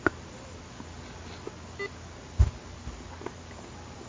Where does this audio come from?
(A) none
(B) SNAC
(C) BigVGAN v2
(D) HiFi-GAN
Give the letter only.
A